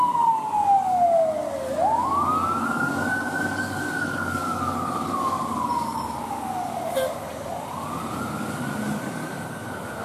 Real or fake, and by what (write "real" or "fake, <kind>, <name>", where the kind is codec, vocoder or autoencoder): fake, codec, DAC